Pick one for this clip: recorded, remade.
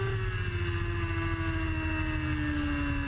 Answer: recorded